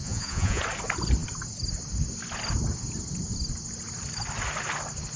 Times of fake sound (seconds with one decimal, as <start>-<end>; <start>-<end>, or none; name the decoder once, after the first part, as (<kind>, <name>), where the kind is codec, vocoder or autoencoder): 0.0-0.6 (vocoder, Vocos)